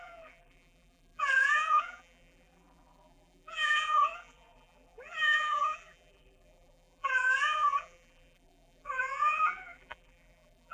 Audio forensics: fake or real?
fake